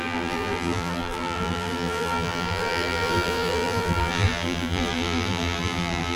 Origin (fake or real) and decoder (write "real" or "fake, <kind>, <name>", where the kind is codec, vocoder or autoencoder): fake, vocoder, BigVGAN v2